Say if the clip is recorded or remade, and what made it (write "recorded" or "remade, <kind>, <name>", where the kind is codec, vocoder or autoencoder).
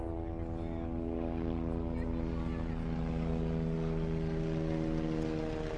recorded